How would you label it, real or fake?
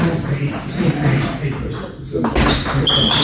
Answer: real